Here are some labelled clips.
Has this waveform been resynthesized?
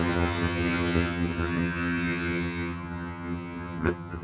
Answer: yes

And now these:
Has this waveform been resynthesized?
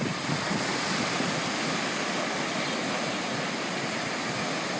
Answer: no